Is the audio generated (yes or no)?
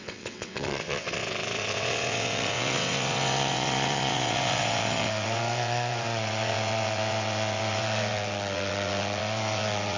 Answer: yes